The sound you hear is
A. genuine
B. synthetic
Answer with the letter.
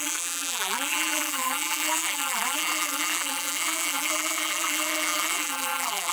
B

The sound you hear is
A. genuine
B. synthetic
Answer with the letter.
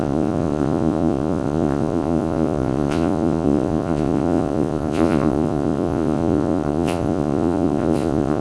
B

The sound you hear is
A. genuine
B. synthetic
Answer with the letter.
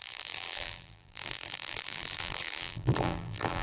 B